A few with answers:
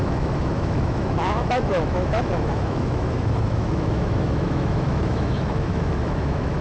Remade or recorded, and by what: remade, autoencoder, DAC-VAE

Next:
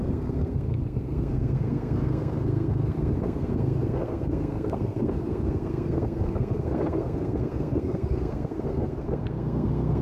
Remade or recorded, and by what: remade, codec, SNAC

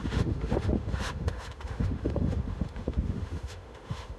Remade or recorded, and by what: remade, autoencoder, DAC-VAE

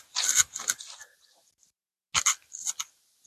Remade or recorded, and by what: recorded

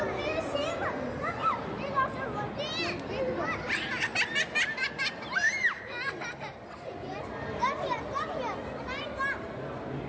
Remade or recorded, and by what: recorded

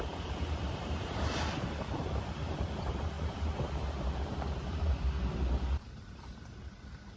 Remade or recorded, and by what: remade, vocoder, BigVGAN v2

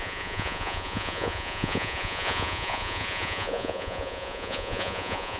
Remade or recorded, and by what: remade, vocoder, Vocos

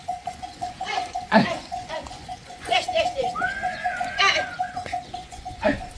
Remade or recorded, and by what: remade, vocoder, Vocos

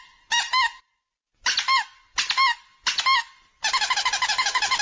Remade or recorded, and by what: recorded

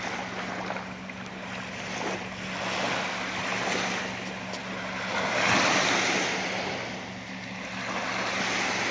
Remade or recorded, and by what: recorded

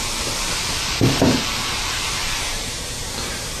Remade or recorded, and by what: remade, vocoder, BigVGAN v2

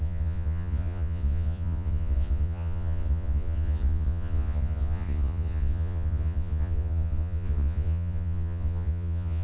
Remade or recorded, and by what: remade, vocoder, Vocos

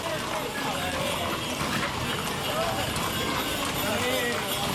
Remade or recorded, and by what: recorded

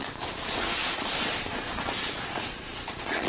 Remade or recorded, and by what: remade, vocoder, Vocos